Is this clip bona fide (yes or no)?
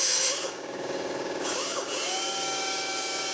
no